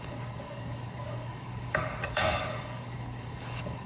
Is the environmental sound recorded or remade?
remade